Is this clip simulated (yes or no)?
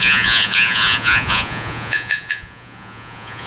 yes